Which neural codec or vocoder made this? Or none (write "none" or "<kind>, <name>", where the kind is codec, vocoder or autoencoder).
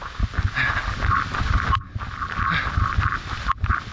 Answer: none